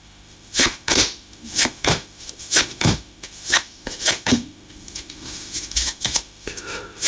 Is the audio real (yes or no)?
no